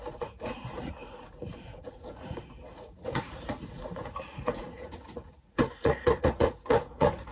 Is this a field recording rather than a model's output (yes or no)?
no